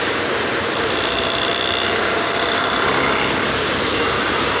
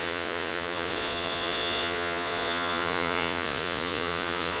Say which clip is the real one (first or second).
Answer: first